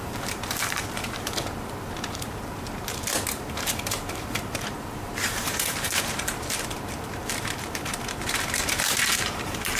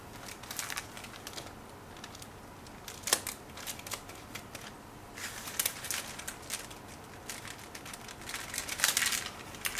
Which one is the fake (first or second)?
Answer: first